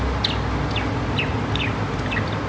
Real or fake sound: real